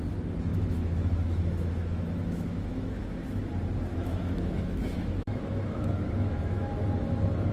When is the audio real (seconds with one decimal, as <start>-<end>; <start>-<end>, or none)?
0.0-0.5; 3.5-3.9; 6.8-7.5